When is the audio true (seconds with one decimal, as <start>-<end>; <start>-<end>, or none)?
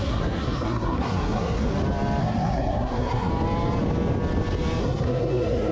1.7-2.2; 3.3-4.8